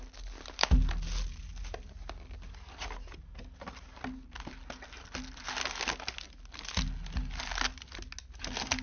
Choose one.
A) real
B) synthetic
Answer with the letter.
A